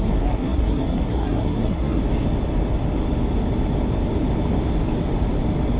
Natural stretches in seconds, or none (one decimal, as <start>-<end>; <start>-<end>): 2.0-5.8